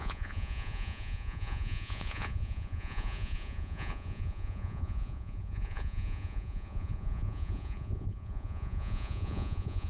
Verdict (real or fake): fake